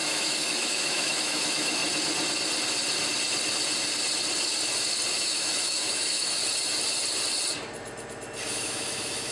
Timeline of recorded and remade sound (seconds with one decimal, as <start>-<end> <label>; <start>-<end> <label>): 0.0-1.8 remade; 1.8-5.1 recorded; 5.1-6.4 remade; 6.4-8.5 recorded; 8.5-9.3 remade